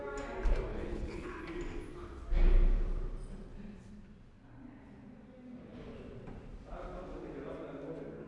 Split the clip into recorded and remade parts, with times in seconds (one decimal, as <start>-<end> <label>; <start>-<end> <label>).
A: 0.0-0.7 recorded; 0.7-1.3 remade; 1.3-8.3 recorded